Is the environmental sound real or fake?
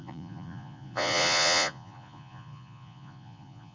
fake